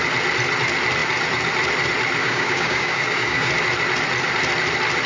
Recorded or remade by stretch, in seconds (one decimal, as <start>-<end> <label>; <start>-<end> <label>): 0.0-2.2 recorded; 2.2-3.5 remade; 3.5-5.1 recorded